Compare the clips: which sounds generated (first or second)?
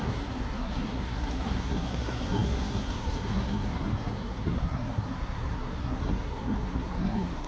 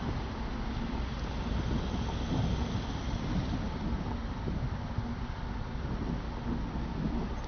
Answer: first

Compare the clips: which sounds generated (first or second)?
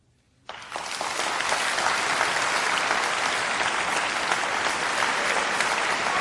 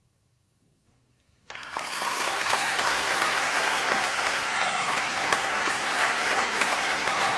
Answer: second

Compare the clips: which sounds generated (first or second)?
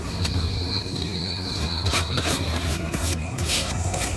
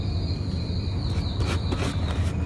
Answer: first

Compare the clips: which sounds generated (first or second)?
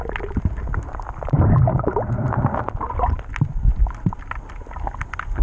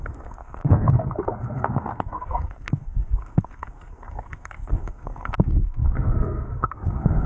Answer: second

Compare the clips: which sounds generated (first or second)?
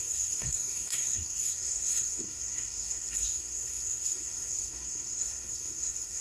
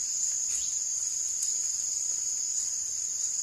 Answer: first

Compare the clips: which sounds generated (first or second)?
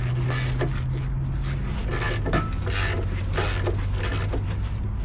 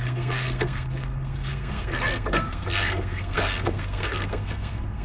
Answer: second